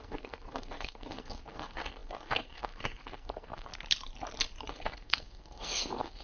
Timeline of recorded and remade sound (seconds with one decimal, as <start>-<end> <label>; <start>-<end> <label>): 0.0-3.7 remade; 3.7-4.7 recorded; 4.7-6.2 remade